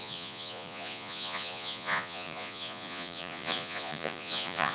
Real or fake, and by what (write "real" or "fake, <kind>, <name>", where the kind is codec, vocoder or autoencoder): fake, vocoder, Vocos